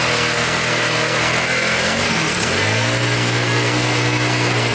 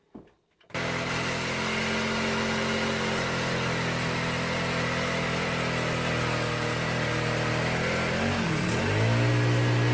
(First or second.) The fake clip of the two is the first